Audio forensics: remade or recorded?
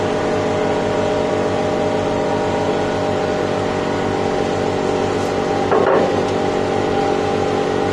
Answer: recorded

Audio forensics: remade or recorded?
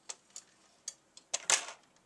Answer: recorded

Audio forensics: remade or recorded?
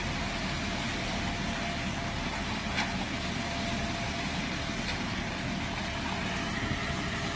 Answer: recorded